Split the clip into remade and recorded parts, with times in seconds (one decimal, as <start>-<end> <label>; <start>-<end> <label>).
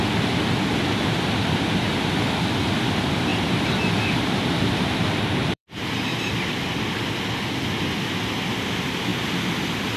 0.0-3.3 recorded; 3.3-6.6 remade; 6.6-10.0 recorded